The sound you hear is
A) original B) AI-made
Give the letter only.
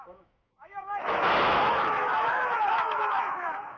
B